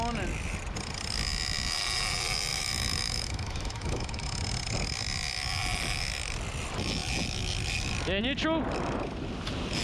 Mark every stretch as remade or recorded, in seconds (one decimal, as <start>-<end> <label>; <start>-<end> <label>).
0.0-2.5 recorded; 2.5-4.4 remade; 4.4-9.8 recorded